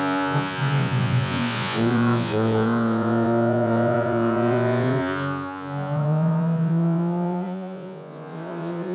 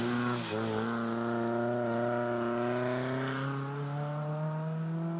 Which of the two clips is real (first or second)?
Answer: second